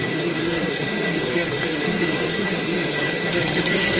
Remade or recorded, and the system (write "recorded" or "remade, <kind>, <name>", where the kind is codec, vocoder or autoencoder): remade, codec, SNAC